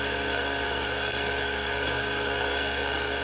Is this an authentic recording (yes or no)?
no